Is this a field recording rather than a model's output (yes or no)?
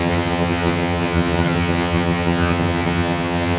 no